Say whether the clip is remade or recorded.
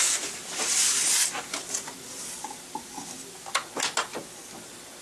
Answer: recorded